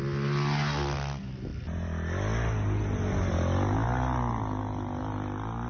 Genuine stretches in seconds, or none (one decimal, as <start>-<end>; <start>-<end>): 0.0-5.7